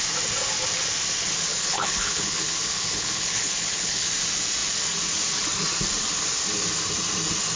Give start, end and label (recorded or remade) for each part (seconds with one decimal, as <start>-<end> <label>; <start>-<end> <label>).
0.0-1.5 recorded; 1.5-4.1 remade; 4.1-7.6 recorded